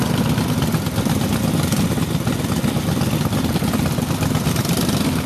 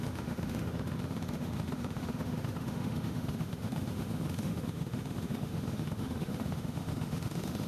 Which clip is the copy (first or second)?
second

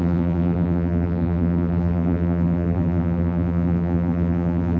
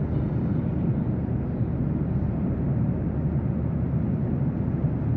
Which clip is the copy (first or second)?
first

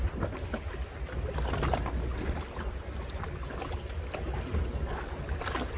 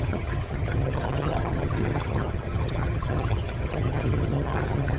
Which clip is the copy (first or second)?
second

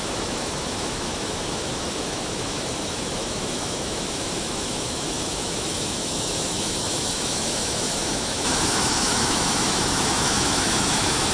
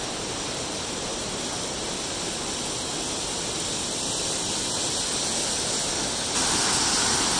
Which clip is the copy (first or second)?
first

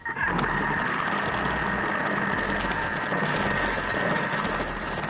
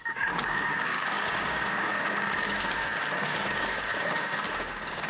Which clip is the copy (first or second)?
second